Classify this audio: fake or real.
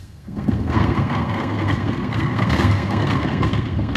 fake